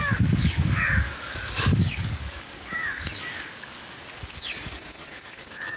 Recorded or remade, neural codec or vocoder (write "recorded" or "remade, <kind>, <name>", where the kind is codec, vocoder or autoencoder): remade, codec, DAC